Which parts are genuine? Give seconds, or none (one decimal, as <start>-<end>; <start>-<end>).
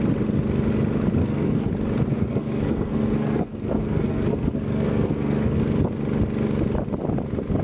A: 0.0-1.2; 1.7-2.1; 5.6-7.6